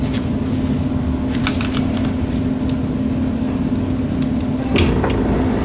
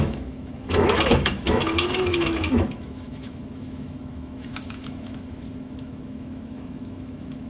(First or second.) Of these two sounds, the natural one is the first